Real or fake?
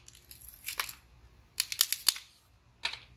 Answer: real